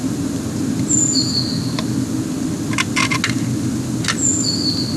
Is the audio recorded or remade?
recorded